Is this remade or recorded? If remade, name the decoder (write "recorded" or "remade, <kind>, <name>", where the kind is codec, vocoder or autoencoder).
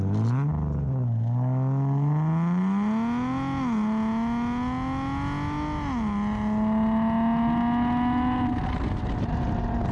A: recorded